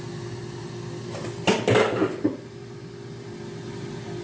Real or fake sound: real